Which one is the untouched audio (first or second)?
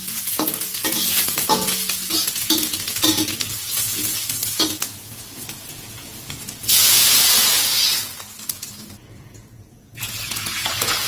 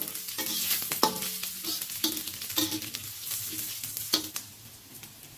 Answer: second